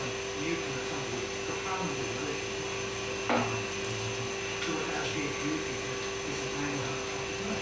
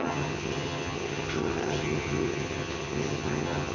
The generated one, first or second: second